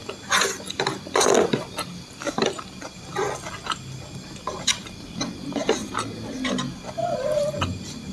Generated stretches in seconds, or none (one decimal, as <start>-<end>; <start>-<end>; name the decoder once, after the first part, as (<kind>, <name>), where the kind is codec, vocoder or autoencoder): none